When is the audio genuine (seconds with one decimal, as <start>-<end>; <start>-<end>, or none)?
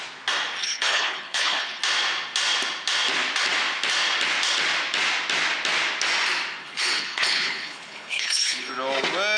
0.0-0.6; 1.8-6.6; 8.7-9.4